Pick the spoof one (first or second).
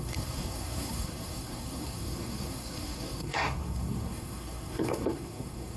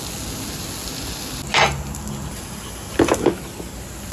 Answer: first